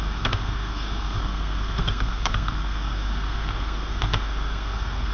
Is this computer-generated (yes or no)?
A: yes